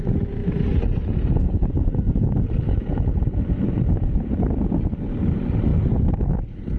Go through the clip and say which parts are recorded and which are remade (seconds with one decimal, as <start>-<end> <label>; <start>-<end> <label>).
0.0-0.4 recorded; 0.4-4.5 remade; 4.5-6.8 recorded